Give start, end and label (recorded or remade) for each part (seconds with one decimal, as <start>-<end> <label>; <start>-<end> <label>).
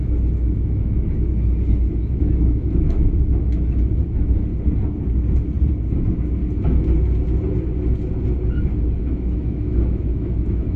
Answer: 0.0-4.5 remade; 4.5-5.8 recorded; 5.8-6.4 remade; 6.4-9.0 recorded; 9.0-10.8 remade